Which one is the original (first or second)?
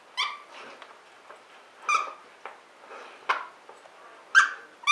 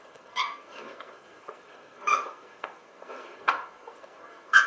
first